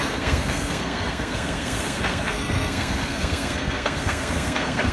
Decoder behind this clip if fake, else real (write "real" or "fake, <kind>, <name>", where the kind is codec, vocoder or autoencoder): fake, codec, SNAC